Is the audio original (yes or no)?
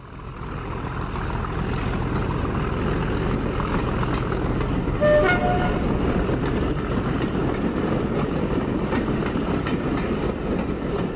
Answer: yes